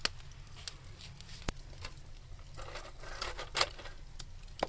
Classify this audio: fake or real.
real